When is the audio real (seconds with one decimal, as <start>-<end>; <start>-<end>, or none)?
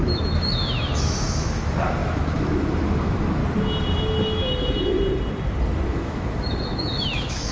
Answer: 3.4-5.9